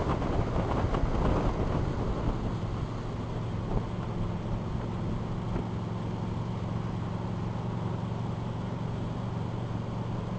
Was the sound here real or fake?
real